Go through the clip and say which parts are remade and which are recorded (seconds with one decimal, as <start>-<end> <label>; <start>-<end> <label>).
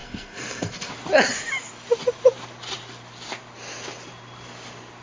0.0-0.9 remade; 0.9-5.0 recorded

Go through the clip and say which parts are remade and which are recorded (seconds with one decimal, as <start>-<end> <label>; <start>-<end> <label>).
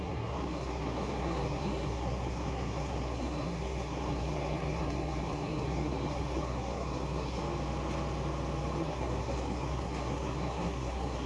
0.0-7.4 remade; 7.4-8.8 recorded; 8.8-11.3 remade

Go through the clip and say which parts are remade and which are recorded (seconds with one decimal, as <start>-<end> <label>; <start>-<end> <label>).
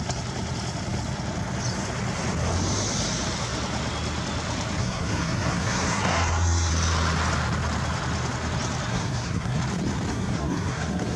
0.0-4.8 recorded; 4.8-6.7 remade; 6.7-8.9 recorded; 8.9-9.6 remade; 9.6-10.1 recorded; 10.1-11.2 remade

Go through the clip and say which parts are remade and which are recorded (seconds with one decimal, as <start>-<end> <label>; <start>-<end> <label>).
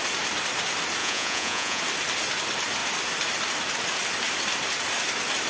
0.0-1.0 recorded; 1.0-1.8 remade; 1.8-5.5 recorded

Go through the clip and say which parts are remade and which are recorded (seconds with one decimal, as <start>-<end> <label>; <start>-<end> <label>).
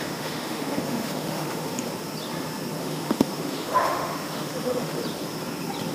0.0-1.7 remade; 1.7-2.8 recorded; 2.8-5.0 remade; 5.0-5.9 recorded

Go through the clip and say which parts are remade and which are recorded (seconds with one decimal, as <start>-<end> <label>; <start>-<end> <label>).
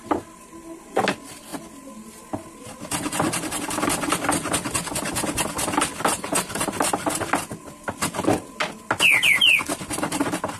0.0-10.6 recorded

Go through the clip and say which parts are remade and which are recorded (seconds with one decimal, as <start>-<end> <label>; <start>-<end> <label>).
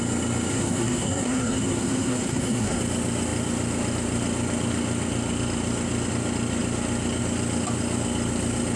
0.0-0.5 recorded; 0.5-2.8 remade; 2.8-8.8 recorded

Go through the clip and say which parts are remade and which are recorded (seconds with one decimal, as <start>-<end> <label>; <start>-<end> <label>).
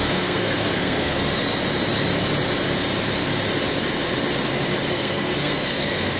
0.0-1.2 remade; 1.2-4.9 recorded; 4.9-6.2 remade